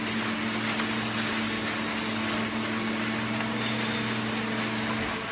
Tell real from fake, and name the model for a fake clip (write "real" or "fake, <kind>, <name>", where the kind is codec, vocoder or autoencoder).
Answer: real